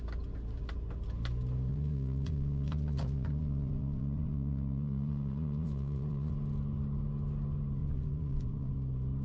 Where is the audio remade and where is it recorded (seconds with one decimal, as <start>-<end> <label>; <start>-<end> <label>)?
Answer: 0.0-1.7 recorded; 1.7-6.3 remade; 6.3-7.8 recorded; 7.8-8.7 remade; 8.7-9.2 recorded